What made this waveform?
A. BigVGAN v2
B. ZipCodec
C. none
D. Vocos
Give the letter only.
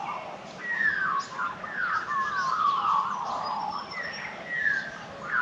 C